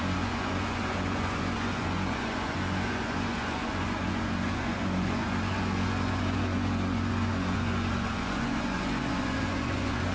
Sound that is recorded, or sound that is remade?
remade